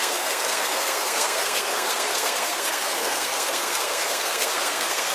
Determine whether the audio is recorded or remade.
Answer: remade